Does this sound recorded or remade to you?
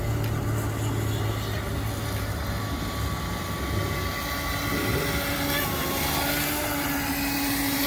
recorded